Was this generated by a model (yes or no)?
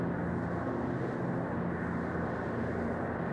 no